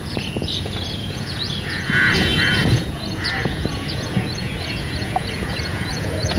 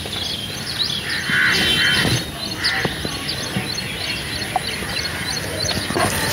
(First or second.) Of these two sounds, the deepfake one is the first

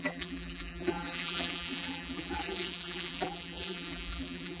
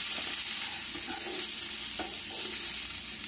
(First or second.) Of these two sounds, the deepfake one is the first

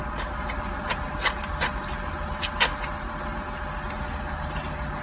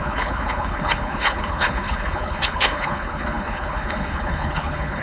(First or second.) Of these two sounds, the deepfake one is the second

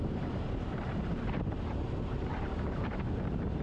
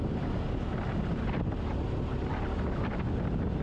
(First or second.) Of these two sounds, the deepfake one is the first